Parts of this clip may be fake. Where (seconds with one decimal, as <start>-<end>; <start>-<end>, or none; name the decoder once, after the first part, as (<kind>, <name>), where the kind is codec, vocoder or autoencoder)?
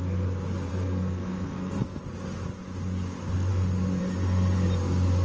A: 0.7-2.0 (codec, SNAC)